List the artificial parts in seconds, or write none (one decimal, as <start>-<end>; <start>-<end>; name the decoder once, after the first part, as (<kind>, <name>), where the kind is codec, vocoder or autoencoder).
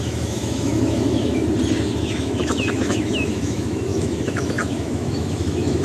0.0-1.4 (autoencoder, DAC-VAE); 2.0-5.8